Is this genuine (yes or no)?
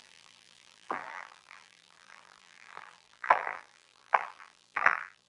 no